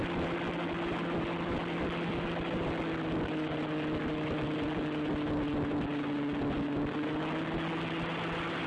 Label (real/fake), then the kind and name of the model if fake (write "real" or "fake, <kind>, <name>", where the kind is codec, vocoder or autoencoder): real